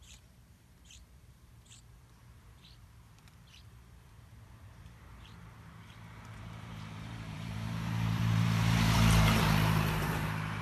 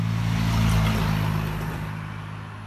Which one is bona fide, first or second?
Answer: second